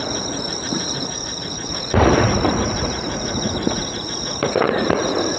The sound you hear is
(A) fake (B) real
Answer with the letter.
A